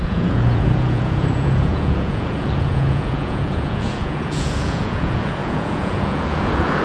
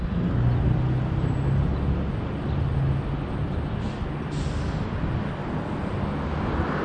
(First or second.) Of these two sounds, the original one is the second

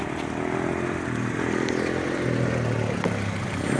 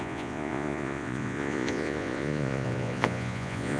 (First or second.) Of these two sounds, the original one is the first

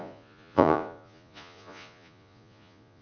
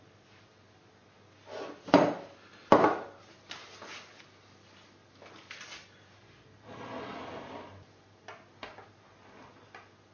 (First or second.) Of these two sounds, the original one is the second